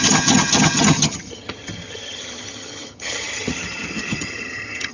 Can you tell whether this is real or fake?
fake